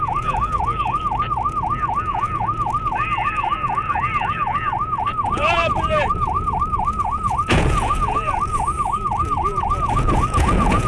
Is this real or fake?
fake